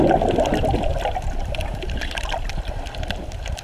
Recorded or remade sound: recorded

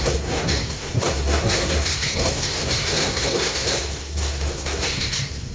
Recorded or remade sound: remade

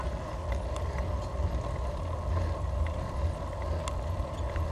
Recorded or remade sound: recorded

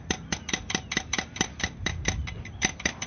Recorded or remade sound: recorded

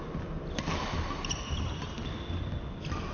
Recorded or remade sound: recorded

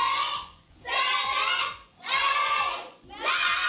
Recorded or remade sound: remade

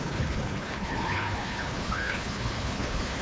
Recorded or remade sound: remade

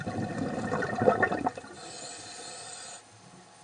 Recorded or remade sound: recorded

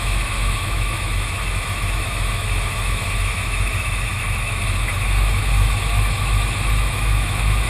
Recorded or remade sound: remade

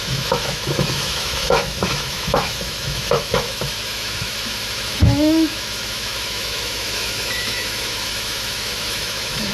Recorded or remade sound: remade